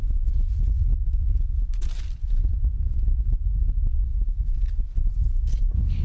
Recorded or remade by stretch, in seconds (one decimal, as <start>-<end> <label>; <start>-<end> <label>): 0.0-6.0 recorded